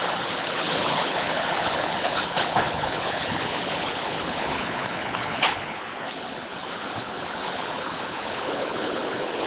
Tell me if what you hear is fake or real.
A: fake